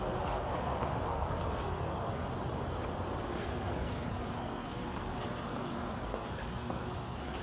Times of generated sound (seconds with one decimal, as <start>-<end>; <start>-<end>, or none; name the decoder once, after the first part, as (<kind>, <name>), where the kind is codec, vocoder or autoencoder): 0.0-2.2 (codec, SNAC); 3.3-7.4